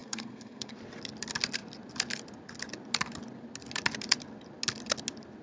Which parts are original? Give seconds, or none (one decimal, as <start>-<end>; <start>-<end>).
0.7-5.4